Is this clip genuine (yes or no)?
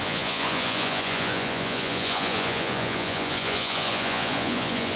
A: no